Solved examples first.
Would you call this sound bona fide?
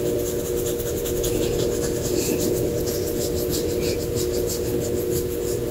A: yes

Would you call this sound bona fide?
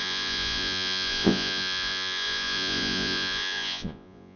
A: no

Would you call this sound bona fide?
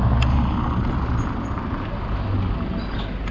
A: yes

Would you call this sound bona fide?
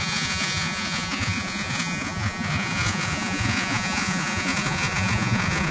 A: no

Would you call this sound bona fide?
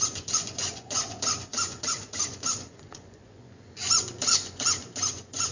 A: no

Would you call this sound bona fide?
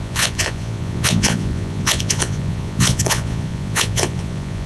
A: no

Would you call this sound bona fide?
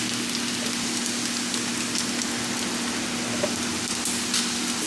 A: yes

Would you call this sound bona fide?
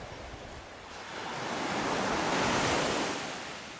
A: yes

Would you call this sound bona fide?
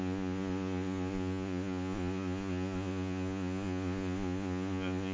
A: no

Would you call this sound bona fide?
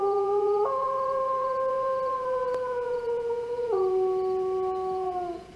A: no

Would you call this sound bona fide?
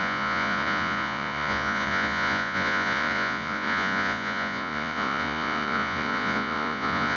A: no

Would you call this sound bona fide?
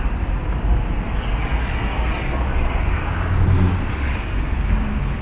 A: yes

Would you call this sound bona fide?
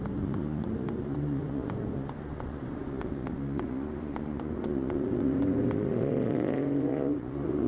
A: no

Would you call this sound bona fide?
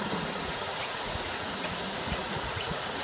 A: no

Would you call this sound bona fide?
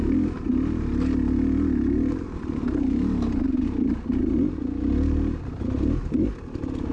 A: yes